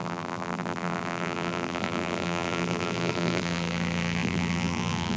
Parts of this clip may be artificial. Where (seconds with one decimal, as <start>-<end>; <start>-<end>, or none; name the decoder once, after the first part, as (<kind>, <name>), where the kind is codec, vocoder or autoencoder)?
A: 0.0-5.2 (vocoder, BigVGAN v2)